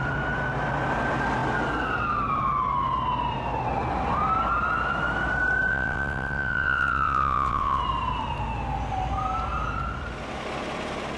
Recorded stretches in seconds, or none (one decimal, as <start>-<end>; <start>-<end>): 0.0-5.7; 7.8-11.2